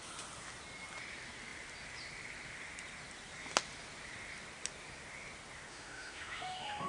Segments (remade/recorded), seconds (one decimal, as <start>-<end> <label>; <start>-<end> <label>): 0.0-5.7 recorded; 5.7-6.9 remade